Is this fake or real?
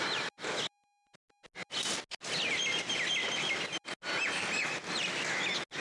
real